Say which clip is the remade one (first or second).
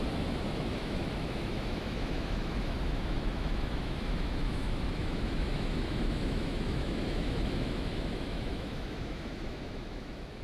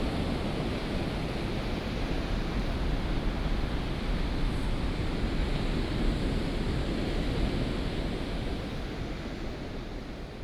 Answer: first